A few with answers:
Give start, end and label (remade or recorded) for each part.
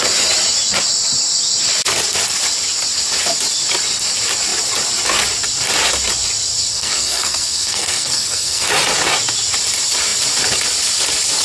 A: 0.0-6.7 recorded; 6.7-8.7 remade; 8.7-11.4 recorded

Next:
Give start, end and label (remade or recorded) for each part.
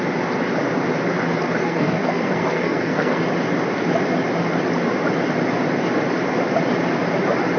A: 0.0-1.6 recorded; 1.6-3.2 remade; 3.2-7.6 recorded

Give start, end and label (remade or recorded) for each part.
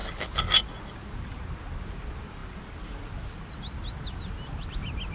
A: 0.0-5.1 recorded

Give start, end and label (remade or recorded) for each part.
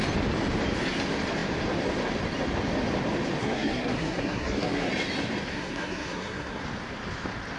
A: 0.0-3.4 recorded; 3.4-4.9 remade; 4.9-5.5 recorded; 5.5-6.6 remade; 6.6-7.6 recorded